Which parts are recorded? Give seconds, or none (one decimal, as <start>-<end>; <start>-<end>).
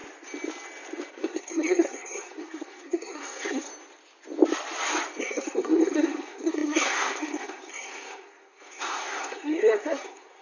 0.0-1.1; 3.7-5.2